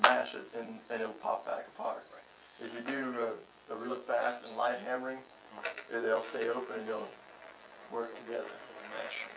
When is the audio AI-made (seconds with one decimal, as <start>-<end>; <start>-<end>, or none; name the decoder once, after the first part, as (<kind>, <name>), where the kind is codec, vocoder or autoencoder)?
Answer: 0.0-1.5 (vocoder, BigVGAN v2); 2.2-9.4